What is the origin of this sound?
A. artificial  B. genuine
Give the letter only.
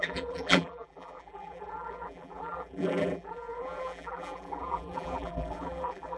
A